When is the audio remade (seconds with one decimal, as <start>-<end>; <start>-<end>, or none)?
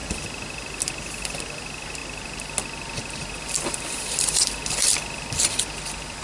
none